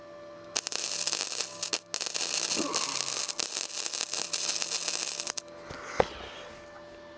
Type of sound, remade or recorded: recorded